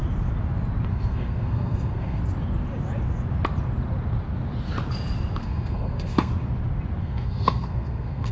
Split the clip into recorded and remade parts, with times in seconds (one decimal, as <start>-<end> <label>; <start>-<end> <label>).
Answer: 0.0-0.9 recorded; 0.9-2.2 remade; 2.2-5.4 recorded; 5.4-6.3 remade; 6.3-7.0 recorded; 7.0-8.3 remade